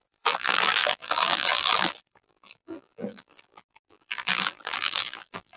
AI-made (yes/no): yes